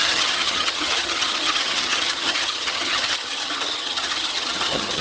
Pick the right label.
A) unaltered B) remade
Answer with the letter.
B